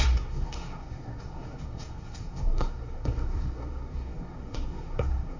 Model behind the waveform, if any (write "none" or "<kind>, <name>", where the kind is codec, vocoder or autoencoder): codec, SNAC